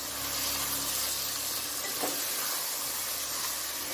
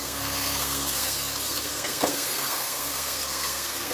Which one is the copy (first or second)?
second